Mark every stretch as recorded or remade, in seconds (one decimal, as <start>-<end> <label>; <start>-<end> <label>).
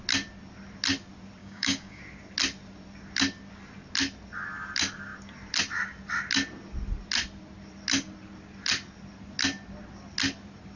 0.0-1.4 recorded; 1.4-2.0 remade; 2.0-10.8 recorded